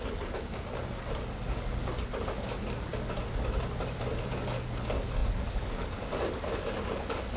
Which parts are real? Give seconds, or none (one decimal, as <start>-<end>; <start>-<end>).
2.9-4.1